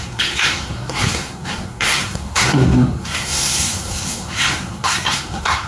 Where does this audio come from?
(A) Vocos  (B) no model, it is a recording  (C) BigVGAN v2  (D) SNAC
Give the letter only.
D